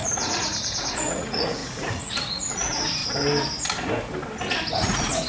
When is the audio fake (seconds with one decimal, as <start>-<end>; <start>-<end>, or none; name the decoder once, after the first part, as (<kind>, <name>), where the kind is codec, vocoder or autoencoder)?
0.0-3.0 (vocoder, Vocos); 4.7-5.3

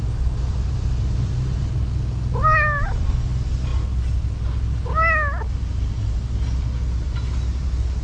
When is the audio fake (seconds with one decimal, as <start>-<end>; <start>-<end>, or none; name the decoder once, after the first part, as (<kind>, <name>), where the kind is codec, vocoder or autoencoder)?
none

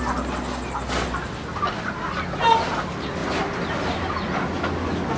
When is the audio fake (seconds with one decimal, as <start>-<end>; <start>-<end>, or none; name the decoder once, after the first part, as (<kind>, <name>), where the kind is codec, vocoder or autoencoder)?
none